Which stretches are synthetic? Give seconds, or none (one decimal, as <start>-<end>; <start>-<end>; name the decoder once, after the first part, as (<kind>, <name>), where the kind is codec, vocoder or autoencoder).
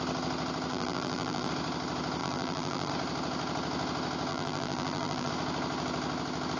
0.7-1.5 (vocoder, BigVGAN v2); 2.2-2.9; 4.3-5.3